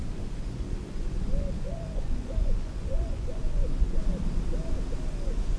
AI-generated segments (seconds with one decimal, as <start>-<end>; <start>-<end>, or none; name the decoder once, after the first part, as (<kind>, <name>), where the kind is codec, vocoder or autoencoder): 0.0-4.0 (vocoder, Vocos); 5.1-5.6